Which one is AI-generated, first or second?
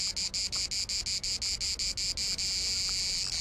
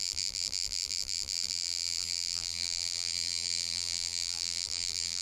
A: second